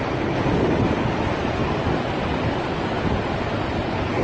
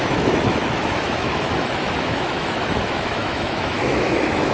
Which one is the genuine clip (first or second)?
first